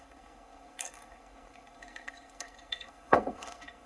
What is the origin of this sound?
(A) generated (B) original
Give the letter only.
A